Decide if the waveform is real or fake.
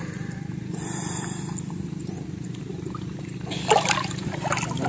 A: real